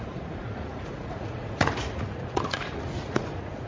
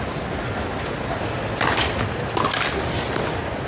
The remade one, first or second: first